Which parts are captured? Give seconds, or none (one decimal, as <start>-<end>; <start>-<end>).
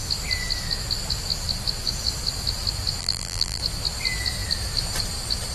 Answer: 0.0-3.0; 3.6-5.5